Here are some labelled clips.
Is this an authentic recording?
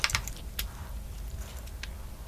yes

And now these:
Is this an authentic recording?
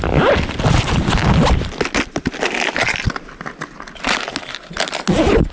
yes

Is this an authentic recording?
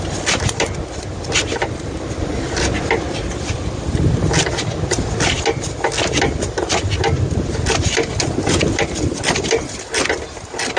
yes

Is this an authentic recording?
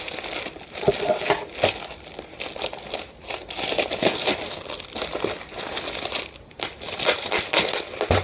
yes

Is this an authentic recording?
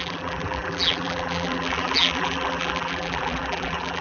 no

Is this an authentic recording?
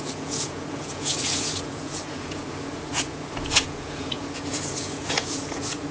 no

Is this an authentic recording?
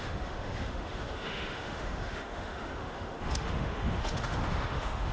no